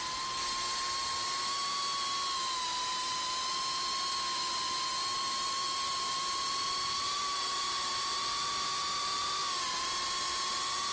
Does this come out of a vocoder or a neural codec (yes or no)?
no